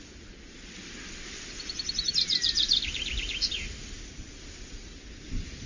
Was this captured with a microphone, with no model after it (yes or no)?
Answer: yes